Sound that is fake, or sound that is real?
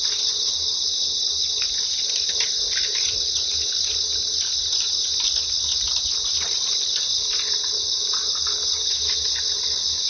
real